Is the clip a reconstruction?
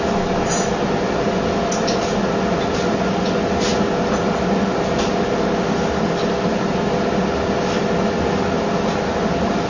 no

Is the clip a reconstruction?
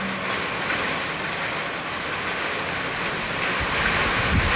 no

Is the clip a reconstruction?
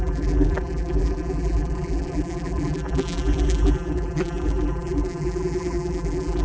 yes